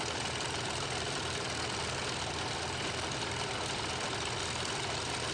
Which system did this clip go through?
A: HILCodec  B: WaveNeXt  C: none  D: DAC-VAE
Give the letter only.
C